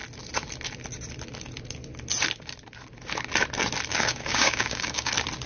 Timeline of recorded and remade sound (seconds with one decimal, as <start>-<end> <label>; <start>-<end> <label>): 0.0-3.9 recorded; 3.9-5.1 remade; 5.1-5.5 recorded